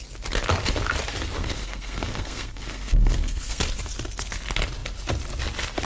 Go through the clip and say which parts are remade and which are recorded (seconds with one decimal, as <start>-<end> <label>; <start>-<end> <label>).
0.0-1.4 recorded; 1.4-3.6 remade; 3.6-5.9 recorded